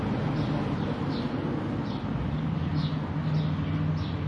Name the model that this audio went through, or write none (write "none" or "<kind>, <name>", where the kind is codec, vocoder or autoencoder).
none